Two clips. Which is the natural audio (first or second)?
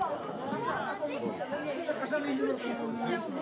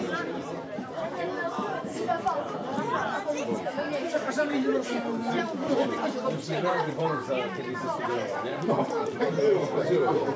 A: first